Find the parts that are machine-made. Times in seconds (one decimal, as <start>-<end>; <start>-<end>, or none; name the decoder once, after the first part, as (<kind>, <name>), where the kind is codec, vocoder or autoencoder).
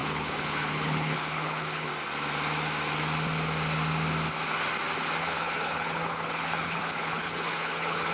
0.0-1.9 (codec, HILCodec); 5.2-8.1